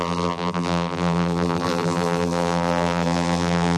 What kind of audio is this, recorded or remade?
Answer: remade